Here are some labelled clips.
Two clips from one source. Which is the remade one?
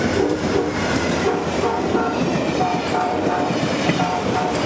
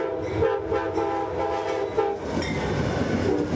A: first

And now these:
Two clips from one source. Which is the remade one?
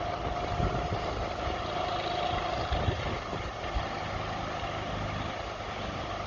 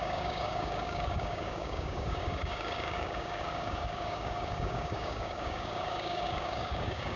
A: second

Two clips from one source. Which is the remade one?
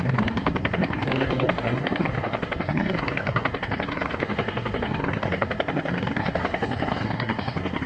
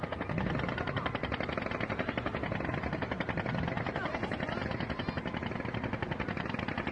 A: first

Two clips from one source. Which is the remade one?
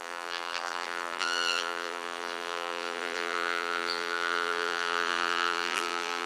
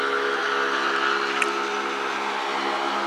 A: first